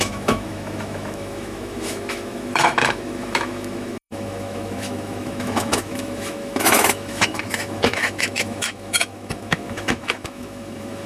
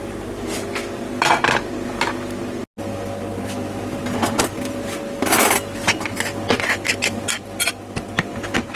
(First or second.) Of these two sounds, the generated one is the first